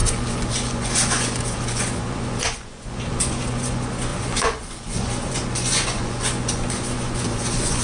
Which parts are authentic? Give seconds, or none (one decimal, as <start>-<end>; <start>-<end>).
none